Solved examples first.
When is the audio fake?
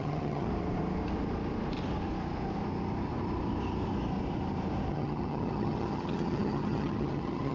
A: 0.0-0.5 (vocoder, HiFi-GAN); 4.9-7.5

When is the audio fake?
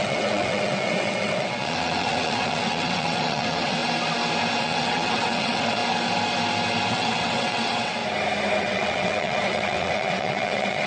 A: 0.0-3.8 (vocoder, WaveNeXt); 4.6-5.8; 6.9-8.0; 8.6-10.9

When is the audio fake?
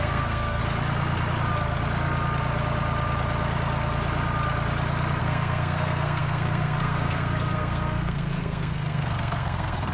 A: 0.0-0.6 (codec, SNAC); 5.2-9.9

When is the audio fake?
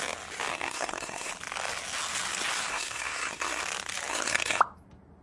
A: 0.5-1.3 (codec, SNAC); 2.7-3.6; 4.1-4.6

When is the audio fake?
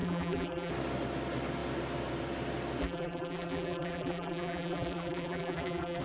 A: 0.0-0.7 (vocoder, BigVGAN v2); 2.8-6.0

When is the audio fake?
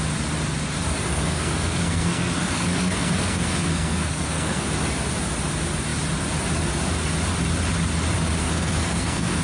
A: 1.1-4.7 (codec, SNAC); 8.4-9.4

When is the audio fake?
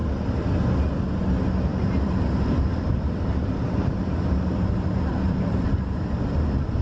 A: 1.7-5.8 (vocoder, BigVGAN v2)